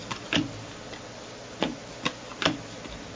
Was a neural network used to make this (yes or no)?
no